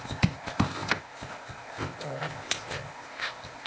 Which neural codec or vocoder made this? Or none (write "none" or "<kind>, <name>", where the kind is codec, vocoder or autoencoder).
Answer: codec, ZipCodec